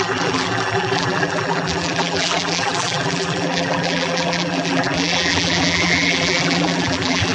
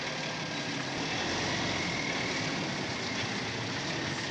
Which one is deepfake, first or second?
first